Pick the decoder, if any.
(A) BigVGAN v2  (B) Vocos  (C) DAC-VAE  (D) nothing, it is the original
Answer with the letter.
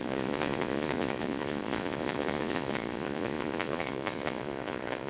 B